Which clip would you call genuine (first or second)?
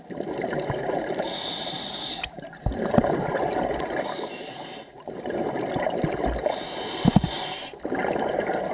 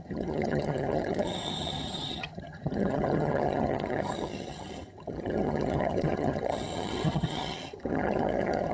first